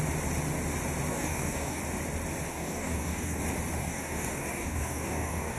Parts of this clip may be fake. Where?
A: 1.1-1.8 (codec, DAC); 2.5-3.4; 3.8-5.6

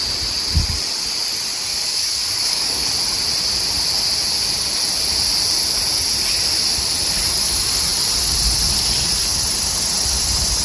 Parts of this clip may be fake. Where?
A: 1.7-2.9 (codec, DAC)